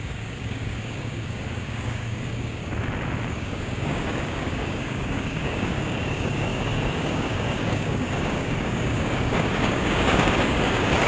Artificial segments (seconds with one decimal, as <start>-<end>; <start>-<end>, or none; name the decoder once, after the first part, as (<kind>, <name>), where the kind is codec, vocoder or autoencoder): 0.0-2.6 (codec, DAC); 3.3-11.1